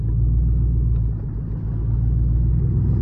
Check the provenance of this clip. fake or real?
real